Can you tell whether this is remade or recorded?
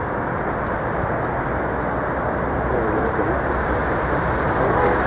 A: remade